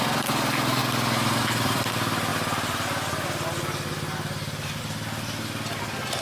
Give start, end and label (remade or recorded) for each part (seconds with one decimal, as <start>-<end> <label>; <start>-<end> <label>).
0.0-0.8 remade; 0.8-1.4 recorded; 1.4-2.3 remade; 2.3-4.8 recorded; 4.8-6.2 remade